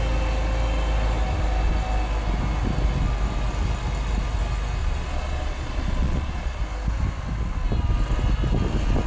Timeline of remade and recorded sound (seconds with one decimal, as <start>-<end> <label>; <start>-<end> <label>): 0.0-4.8 recorded; 4.8-6.6 remade; 6.6-9.1 recorded